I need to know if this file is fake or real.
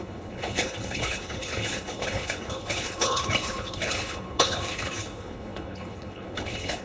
fake